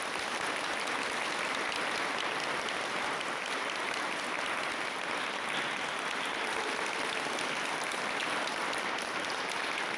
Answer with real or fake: real